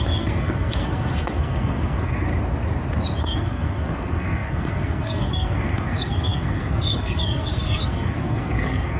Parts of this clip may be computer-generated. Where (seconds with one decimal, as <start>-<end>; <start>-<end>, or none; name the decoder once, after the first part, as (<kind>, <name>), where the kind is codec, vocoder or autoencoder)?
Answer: 0.0-2.3 (codec, SNAC); 3.2-9.0